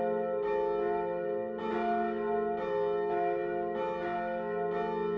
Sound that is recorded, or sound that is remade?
recorded